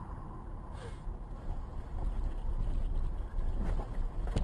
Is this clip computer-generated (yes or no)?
no